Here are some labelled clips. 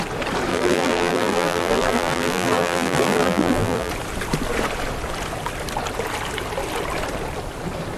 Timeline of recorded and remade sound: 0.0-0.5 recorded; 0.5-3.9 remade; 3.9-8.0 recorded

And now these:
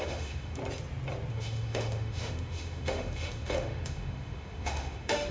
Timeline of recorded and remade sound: 0.0-0.6 remade; 0.6-1.3 recorded; 1.3-5.3 remade

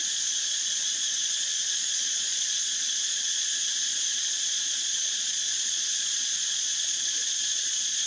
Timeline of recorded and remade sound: 0.0-8.1 remade

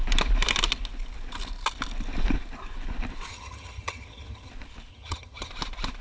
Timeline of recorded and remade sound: 0.0-3.3 recorded; 3.3-4.5 remade; 4.5-4.9 recorded; 4.9-5.5 remade; 5.5-6.0 recorded

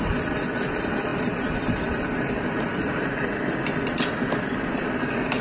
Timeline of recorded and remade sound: 0.0-5.4 recorded

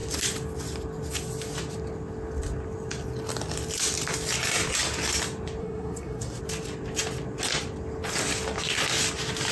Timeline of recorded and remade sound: 0.0-5.6 recorded; 5.6-6.4 remade; 6.4-9.5 recorded

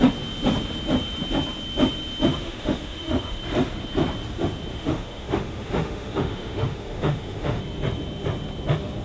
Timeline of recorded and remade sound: 0.0-2.3 recorded; 2.3-3.4 remade; 3.4-4.7 recorded; 4.7-7.6 remade; 7.6-9.0 recorded

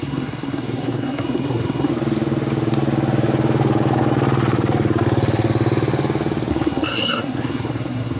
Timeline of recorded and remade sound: 0.0-1.9 remade; 1.9-6.5 recorded; 6.5-8.2 remade